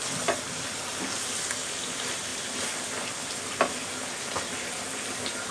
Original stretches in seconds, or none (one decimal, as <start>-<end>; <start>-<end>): 0.0-5.5